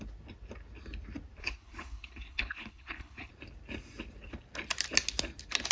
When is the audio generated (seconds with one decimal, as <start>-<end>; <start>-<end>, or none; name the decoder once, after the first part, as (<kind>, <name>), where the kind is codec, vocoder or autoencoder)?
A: 1.4-3.3 (codec, HILCodec)